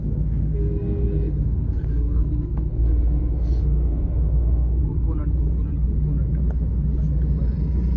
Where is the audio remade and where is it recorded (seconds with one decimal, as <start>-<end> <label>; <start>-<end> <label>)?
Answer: 0.0-4.8 remade; 4.8-8.0 recorded